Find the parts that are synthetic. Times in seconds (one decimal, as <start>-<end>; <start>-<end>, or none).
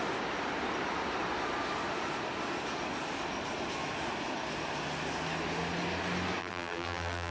6.4-7.3